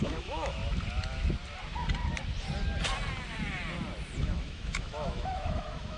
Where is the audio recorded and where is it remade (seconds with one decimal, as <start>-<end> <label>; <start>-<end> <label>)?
0.0-0.6 remade; 0.6-4.2 recorded; 4.2-6.0 remade